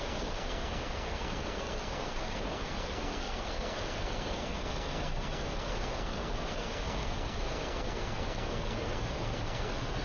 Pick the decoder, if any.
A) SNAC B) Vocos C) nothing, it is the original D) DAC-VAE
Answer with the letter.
A